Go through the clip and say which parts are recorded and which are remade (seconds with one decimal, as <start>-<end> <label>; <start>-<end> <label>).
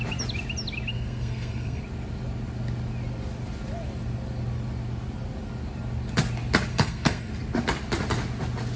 0.0-0.9 recorded; 0.9-1.8 remade; 1.8-6.7 recorded; 6.7-7.3 remade; 7.3-8.8 recorded